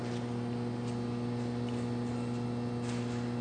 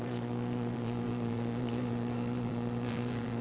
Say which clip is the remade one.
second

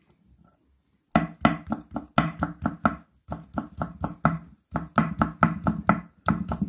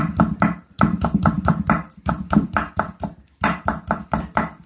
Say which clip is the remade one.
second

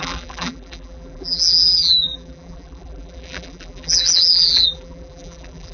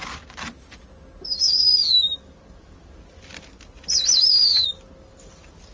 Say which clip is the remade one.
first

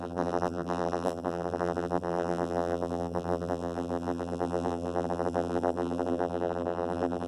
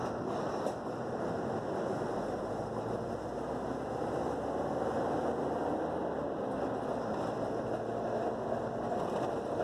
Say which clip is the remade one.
first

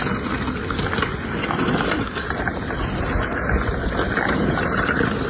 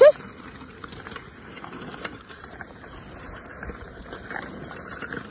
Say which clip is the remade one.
second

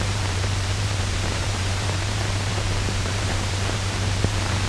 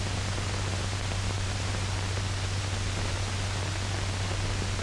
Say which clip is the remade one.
first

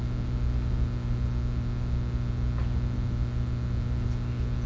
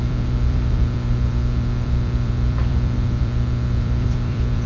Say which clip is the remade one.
second